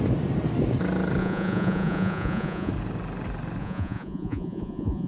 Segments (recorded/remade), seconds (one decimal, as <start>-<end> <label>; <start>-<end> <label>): 0.0-1.2 recorded; 1.2-2.7 remade; 2.7-3.6 recorded; 3.6-5.1 remade